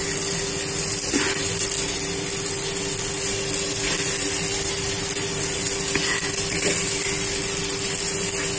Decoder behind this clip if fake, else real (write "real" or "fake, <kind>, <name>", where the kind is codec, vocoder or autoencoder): real